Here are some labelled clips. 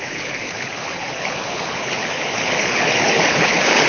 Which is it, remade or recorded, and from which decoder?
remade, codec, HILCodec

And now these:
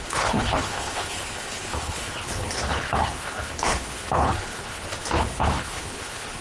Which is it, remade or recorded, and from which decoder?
remade, codec, HILCodec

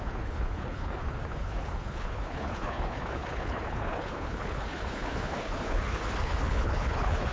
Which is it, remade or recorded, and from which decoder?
remade, codec, HILCodec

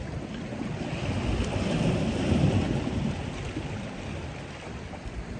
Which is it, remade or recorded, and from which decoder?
recorded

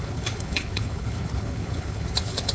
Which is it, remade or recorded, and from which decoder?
remade, codec, HILCodec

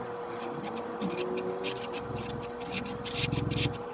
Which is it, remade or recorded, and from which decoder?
recorded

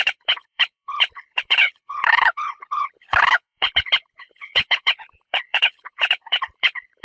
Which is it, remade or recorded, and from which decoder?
remade, codec, HILCodec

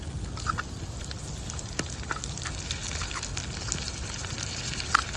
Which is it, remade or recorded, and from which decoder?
recorded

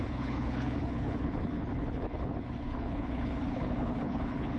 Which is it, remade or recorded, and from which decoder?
remade, codec, HILCodec